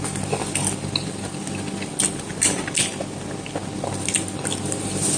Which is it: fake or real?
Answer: real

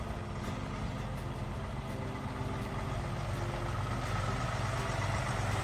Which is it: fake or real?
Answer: real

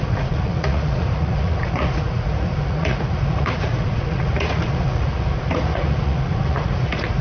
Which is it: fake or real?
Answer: fake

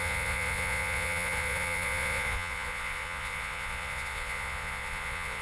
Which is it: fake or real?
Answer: fake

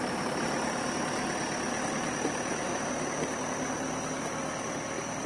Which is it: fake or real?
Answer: real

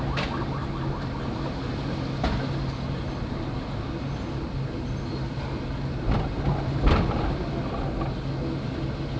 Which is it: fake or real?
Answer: real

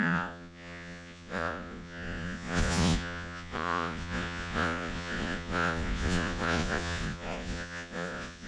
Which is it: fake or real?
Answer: fake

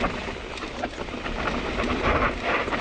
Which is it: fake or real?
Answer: fake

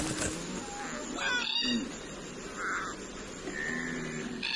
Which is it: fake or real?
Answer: real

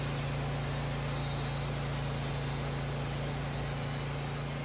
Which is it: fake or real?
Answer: real